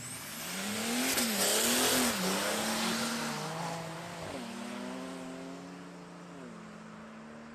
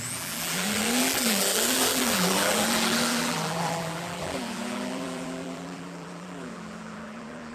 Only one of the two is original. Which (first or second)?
first